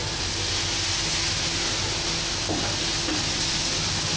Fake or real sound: real